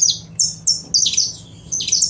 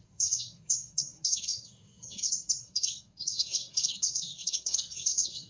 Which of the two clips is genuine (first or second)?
first